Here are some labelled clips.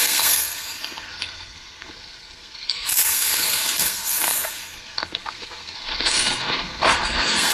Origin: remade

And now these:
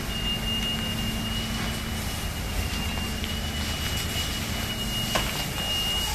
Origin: recorded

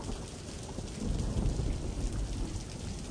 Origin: recorded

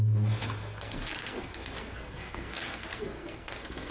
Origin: remade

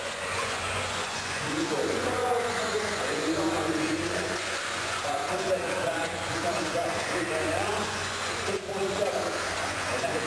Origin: remade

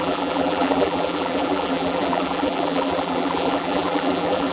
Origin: remade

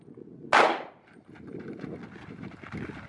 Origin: recorded